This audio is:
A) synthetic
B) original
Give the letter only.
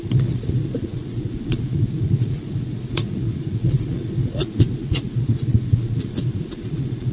A